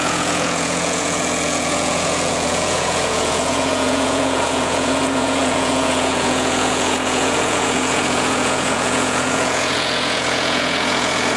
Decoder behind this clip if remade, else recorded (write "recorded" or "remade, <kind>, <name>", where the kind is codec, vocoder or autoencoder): remade, vocoder, Vocos